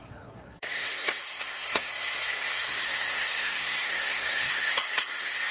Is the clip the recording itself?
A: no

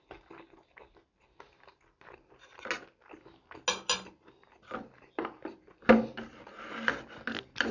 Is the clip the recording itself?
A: yes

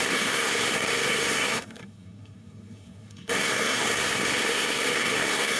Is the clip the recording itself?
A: no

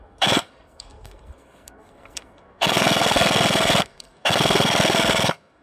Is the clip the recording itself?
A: no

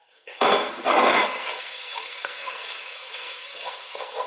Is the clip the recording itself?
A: no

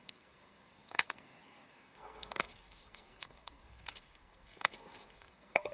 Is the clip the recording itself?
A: no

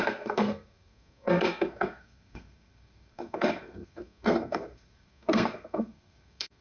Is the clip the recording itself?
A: no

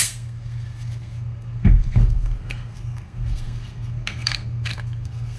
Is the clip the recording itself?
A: no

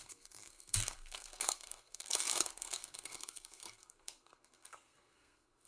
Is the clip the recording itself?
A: no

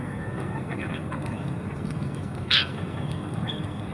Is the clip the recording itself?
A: no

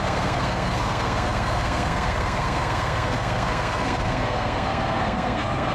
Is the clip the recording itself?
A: no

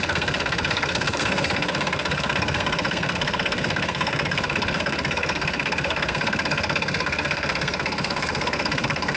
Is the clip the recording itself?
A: no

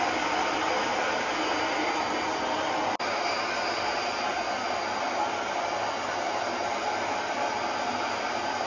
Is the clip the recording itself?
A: yes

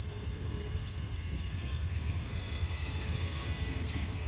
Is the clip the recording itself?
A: no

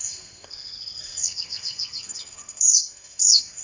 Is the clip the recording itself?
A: no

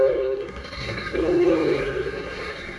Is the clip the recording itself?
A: no